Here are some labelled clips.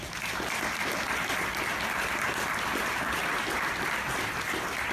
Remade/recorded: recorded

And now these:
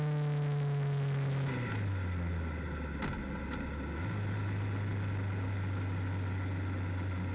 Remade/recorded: recorded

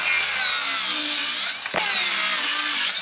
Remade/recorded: recorded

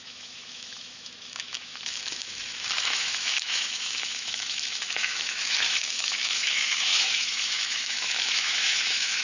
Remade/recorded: remade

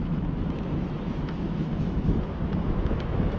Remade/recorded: remade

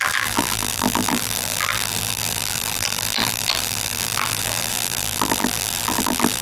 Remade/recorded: remade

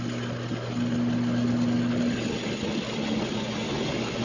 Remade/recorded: recorded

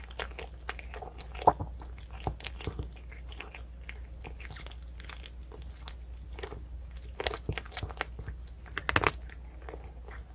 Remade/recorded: recorded